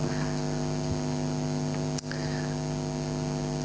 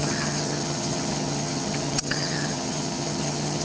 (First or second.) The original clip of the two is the first